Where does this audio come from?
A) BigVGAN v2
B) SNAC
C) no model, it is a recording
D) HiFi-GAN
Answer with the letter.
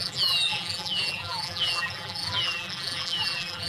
A